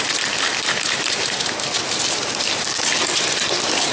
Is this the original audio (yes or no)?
yes